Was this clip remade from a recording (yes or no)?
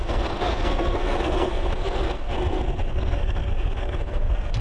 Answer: yes